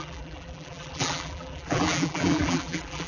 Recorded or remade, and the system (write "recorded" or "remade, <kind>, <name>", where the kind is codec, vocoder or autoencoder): remade, vocoder, BigVGAN v2